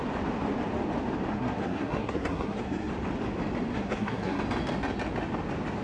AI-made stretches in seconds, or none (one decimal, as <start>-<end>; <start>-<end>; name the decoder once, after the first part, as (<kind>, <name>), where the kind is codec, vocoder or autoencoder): 1.3-2.9 (codec, SNAC); 3.7-4.4